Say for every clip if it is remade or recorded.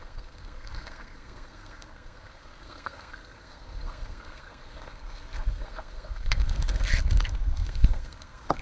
remade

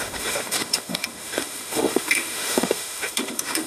remade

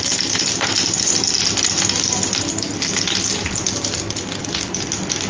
recorded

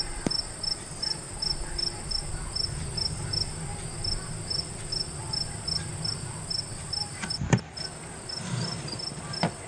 recorded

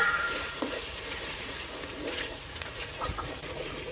remade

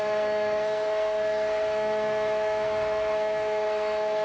remade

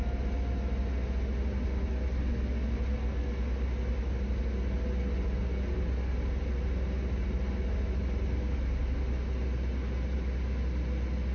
recorded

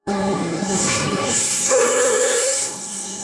remade